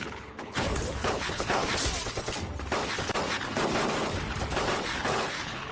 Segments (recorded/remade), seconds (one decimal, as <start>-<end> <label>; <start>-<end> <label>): 0.0-1.6 remade; 1.6-5.0 recorded; 5.0-5.7 remade